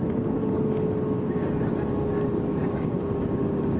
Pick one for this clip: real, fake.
fake